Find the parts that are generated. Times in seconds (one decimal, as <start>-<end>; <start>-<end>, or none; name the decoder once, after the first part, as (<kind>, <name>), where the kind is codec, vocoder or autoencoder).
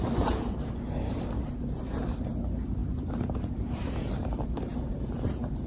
0.0-5.7 (vocoder, BigVGAN v2)